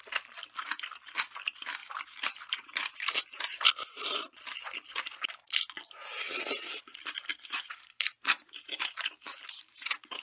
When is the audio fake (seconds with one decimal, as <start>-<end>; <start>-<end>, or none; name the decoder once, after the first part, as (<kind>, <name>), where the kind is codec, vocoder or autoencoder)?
1.8-3.7 (vocoder, BigVGAN v2); 7.3-10.2